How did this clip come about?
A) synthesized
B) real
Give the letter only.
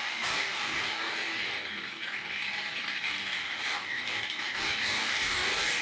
A